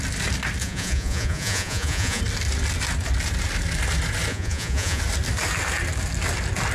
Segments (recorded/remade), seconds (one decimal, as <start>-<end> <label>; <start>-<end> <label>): 0.0-0.6 recorded; 0.6-2.2 remade; 2.2-4.3 recorded; 4.3-5.0 remade; 5.0-6.7 recorded